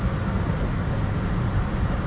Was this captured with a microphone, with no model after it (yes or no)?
yes